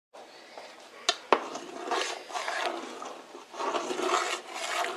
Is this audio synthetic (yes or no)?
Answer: no